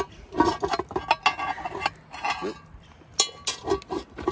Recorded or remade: recorded